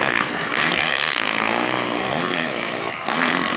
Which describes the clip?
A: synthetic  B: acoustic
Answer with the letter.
A